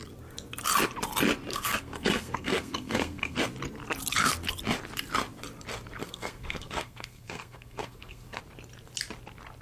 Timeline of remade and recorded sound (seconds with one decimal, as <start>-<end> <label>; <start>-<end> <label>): 0.0-1.5 recorded; 1.5-3.4 remade; 3.4-6.0 recorded; 6.0-8.4 remade; 8.4-9.6 recorded